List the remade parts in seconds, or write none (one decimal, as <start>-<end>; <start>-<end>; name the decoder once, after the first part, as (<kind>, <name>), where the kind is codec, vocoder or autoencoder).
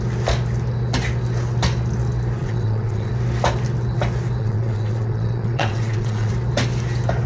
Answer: 2.4-3.1 (vocoder, WaveNeXt); 4.4-6.3